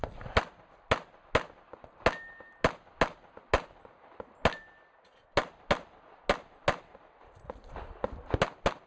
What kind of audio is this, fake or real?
real